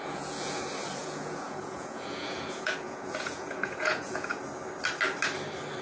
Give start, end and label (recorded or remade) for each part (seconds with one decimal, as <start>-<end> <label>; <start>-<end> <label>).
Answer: 0.0-0.6 remade; 0.6-1.0 recorded; 1.0-4.4 remade; 4.4-5.8 recorded